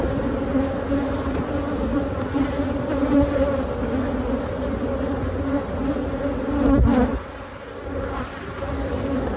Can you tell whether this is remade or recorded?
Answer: recorded